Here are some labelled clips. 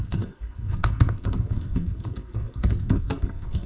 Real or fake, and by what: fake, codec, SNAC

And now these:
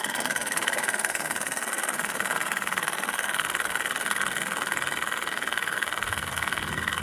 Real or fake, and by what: fake, codec, SNAC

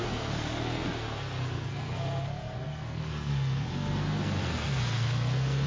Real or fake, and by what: fake, codec, SNAC